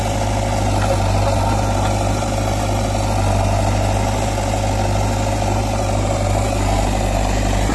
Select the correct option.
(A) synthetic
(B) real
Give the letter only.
B